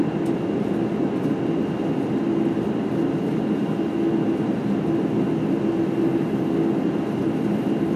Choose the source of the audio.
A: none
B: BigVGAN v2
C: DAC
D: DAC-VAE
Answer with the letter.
A